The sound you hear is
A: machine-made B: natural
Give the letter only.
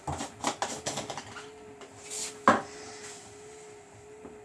B